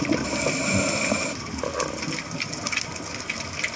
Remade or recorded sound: recorded